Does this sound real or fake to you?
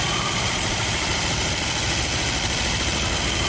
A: fake